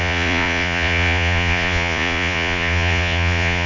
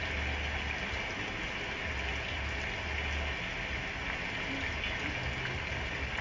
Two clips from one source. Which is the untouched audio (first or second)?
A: second